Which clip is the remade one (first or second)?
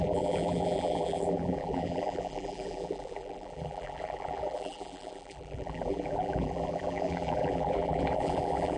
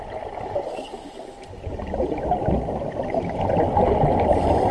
first